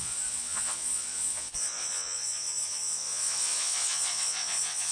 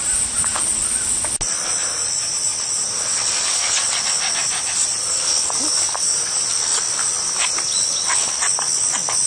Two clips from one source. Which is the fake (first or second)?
first